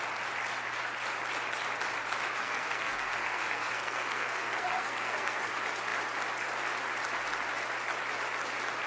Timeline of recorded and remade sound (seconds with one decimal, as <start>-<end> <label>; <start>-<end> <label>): 0.0-2.4 recorded; 2.4-5.5 remade; 5.5-8.9 recorded